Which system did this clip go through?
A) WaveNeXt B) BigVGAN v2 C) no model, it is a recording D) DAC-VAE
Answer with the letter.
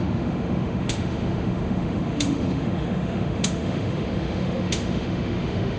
D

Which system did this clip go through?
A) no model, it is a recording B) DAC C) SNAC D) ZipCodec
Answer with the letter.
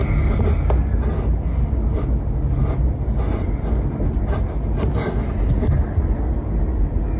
A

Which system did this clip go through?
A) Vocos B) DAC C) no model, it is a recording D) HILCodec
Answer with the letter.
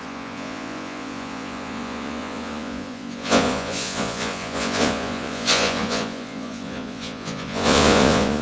A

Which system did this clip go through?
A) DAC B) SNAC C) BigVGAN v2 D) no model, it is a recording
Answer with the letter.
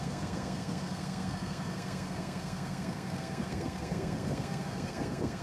B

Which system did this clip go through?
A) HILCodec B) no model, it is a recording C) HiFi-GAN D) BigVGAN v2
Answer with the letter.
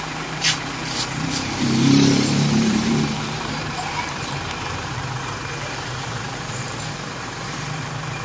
D